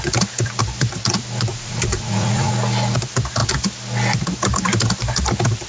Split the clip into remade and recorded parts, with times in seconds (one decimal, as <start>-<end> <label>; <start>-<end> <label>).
0.0-1.5 recorded; 1.5-2.5 remade; 2.5-5.7 recorded